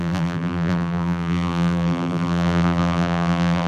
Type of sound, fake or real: fake